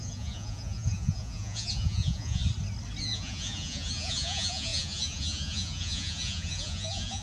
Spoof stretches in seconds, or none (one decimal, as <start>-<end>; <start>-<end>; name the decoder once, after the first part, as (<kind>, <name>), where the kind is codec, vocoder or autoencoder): 0.0-2.4 (vocoder, Vocos); 3.0-7.2